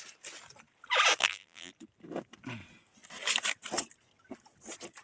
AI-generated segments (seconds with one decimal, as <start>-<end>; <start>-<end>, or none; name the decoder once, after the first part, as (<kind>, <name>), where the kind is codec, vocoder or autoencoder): 1.2-1.7 (vocoder, BigVGAN v2)